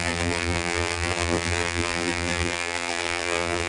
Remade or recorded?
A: remade